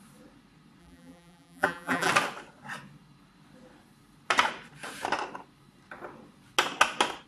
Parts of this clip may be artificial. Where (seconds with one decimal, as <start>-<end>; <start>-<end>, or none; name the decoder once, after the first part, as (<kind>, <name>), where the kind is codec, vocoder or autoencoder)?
0.8-2.1 (vocoder, BigVGAN v2)